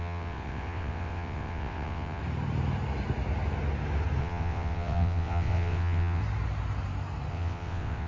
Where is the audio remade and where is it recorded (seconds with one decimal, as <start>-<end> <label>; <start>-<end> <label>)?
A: 0.0-2.2 remade; 2.2-4.2 recorded; 4.2-6.2 remade; 6.2-7.3 recorded; 7.3-8.1 remade